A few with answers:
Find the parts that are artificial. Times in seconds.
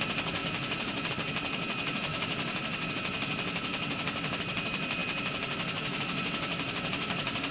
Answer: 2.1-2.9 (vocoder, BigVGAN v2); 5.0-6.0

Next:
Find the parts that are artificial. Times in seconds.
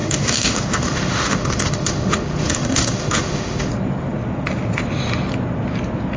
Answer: 0.0-3.7 (autoencoder, DAC-VAE)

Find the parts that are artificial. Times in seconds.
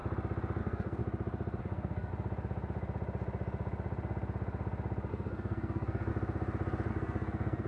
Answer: 0.6-1.0 (codec, SNAC); 1.6-2.1; 5.1-6.1; 6.9-7.7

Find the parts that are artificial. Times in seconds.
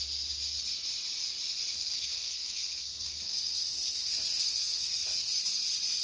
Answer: 1.7-5.3 (codec, SNAC)